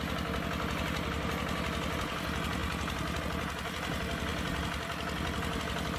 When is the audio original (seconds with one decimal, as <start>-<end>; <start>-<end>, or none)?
0.0-6.0